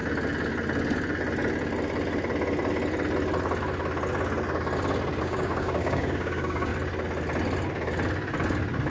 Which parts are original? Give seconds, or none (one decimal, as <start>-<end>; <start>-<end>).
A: 0.0-5.2; 6.7-8.9